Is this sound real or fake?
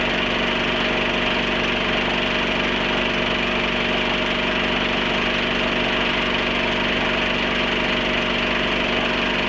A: real